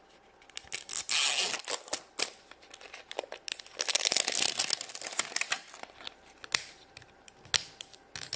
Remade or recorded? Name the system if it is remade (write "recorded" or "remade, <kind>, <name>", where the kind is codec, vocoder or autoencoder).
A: recorded